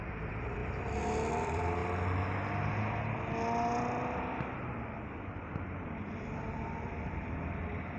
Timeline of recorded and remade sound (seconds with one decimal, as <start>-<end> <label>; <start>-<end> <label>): 0.0-0.6 remade; 0.6-1.3 recorded; 1.3-1.8 remade; 1.8-6.1 recorded; 6.1-8.0 remade